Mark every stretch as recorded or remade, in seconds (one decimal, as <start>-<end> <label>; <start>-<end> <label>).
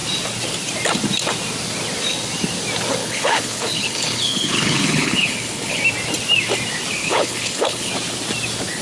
0.0-3.0 recorded; 3.0-5.8 remade; 5.8-7.0 recorded; 7.0-7.9 remade; 7.9-8.8 recorded